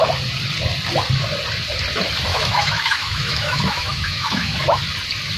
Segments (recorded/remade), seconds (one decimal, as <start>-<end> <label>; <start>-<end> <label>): 0.0-2.3 recorded; 2.3-4.8 remade; 4.8-5.4 recorded